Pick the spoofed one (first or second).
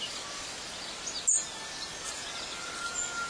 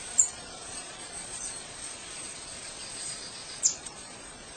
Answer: second